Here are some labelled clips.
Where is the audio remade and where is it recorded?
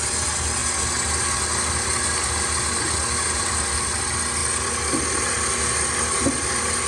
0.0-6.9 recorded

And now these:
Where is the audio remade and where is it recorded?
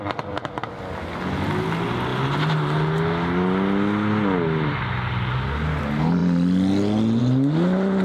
0.0-8.0 recorded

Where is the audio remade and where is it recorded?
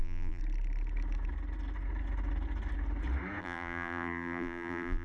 0.0-0.4 remade; 0.4-3.4 recorded; 3.4-5.0 remade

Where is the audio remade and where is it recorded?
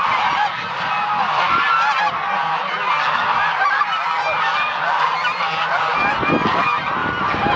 0.0-7.6 recorded